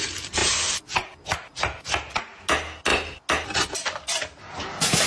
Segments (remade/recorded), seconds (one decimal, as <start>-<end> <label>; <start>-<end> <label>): 0.0-0.4 recorded; 0.4-1.1 remade; 1.1-5.1 recorded